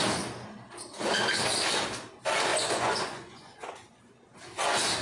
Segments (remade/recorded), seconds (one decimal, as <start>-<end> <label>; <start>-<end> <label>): 0.0-2.5 recorded; 2.5-4.0 remade; 4.0-5.0 recorded